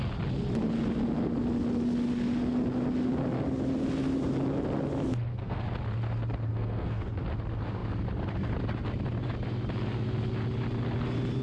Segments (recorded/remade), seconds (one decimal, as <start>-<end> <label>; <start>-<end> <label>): 0.0-5.1 recorded; 5.1-5.6 remade; 5.6-6.5 recorded; 6.5-7.0 remade; 7.0-11.4 recorded